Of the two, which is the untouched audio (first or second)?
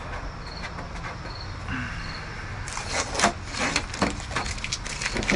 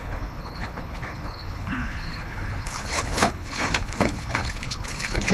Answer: first